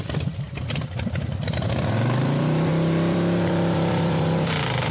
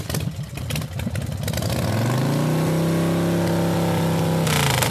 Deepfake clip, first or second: first